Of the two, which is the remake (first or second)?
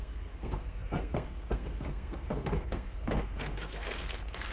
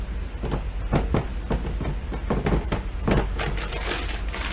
first